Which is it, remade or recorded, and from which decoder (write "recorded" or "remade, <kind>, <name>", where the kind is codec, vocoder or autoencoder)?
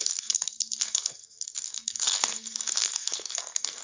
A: remade, codec, SNAC